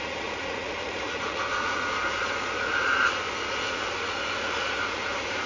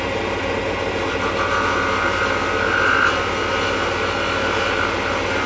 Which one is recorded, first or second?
second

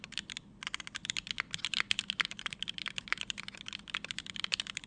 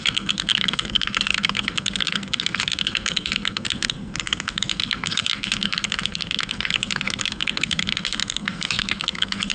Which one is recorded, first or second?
first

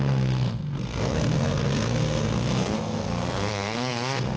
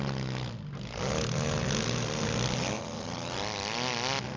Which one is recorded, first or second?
second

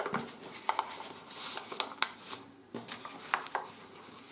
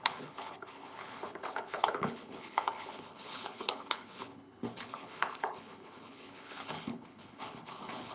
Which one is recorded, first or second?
first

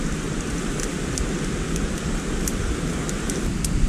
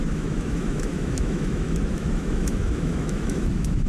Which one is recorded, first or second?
first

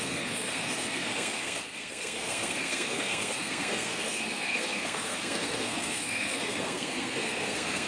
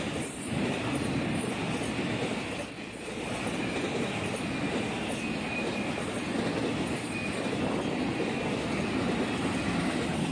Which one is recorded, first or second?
second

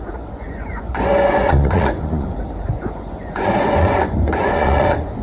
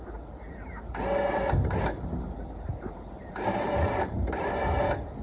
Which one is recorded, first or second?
second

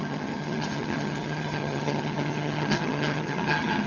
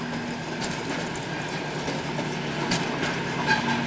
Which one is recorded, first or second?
second